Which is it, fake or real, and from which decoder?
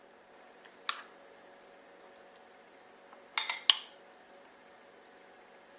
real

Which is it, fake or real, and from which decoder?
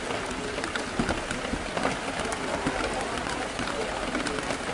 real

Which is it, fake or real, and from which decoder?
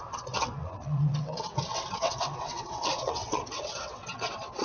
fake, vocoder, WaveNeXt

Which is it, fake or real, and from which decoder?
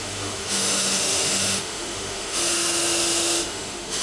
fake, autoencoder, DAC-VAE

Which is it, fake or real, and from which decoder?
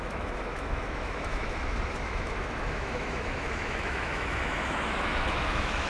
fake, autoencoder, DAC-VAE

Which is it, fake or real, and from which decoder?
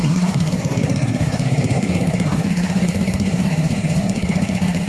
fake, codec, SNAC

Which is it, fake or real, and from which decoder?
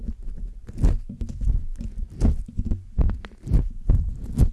real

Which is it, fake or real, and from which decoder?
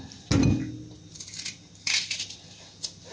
real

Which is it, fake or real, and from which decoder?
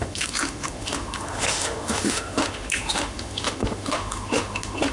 fake, autoencoder, DAC-VAE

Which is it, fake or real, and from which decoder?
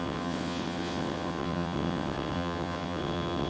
fake, vocoder, WaveNeXt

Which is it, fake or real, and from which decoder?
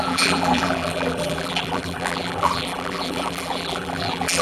fake, vocoder, BigVGAN v2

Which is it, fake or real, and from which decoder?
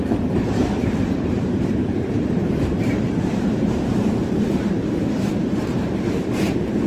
fake, vocoder, BigVGAN v2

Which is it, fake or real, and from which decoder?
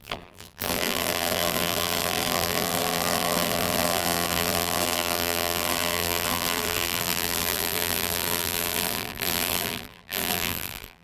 fake, vocoder, BigVGAN v2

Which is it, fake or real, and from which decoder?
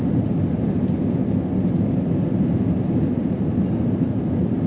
real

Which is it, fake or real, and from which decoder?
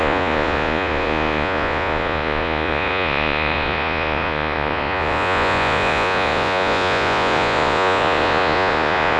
fake, vocoder, Vocos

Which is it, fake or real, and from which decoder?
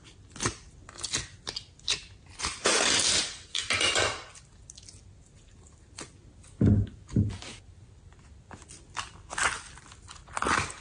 real